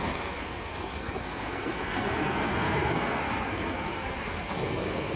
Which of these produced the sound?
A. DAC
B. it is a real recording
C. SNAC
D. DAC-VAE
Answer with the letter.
C